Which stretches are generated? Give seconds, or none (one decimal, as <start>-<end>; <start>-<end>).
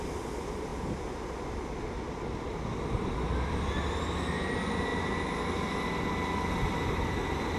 none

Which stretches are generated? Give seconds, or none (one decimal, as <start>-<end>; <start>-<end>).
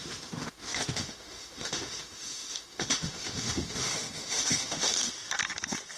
0.0-5.1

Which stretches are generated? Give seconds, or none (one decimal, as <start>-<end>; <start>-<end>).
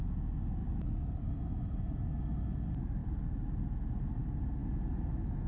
0.6-1.7; 3.0-3.6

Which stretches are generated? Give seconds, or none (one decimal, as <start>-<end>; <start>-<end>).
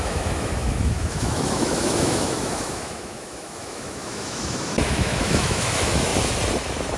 0.0-6.1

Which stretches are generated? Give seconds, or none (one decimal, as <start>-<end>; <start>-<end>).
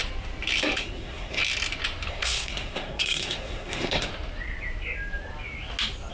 0.8-1.4; 2.1-4.1